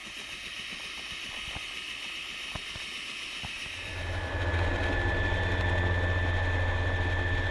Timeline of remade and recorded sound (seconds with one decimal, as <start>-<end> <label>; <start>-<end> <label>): 0.0-7.5 recorded